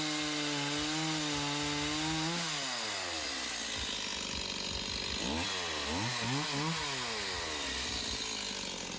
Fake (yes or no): no